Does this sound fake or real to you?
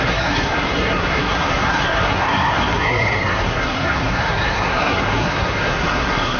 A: fake